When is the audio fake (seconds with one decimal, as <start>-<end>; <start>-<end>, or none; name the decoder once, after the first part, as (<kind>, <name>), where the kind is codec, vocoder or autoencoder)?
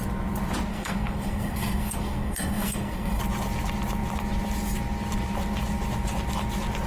0.7-3.2 (codec, SNAC)